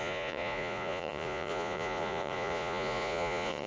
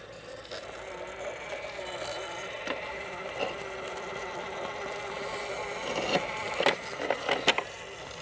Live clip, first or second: second